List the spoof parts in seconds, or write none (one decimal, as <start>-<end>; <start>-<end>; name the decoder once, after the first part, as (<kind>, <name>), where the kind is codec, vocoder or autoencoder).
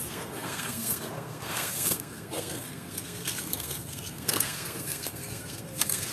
0.0-6.1 (codec, SNAC)